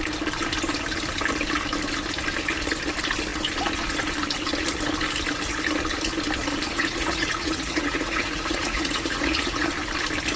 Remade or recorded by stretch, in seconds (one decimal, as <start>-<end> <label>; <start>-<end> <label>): 0.0-6.7 recorded; 6.7-9.7 remade; 9.7-10.4 recorded